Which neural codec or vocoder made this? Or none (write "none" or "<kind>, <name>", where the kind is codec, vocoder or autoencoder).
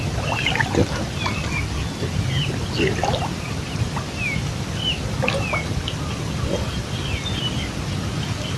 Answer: none